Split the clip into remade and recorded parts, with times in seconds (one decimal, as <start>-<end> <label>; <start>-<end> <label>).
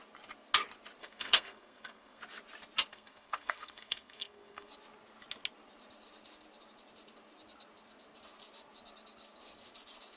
0.0-1.0 recorded; 1.0-2.2 remade; 2.2-2.9 recorded; 2.9-4.7 remade; 4.7-10.2 recorded